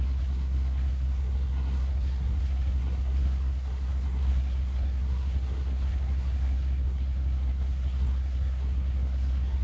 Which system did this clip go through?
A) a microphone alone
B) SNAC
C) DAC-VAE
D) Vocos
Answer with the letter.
B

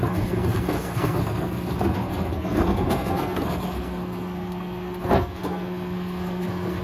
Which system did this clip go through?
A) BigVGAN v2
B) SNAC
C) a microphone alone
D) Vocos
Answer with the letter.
B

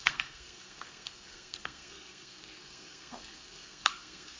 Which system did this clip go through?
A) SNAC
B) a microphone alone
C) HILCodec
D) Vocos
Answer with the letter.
A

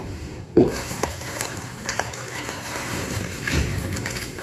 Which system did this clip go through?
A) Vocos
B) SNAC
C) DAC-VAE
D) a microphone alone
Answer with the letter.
B